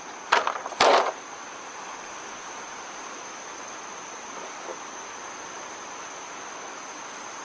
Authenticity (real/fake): real